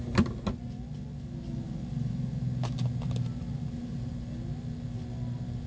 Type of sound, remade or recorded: recorded